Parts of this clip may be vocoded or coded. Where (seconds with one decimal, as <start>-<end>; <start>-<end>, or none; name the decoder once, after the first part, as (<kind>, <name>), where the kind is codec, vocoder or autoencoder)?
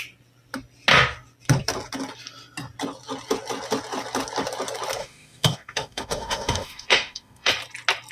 5.0-7.5 (autoencoder, DAC-VAE)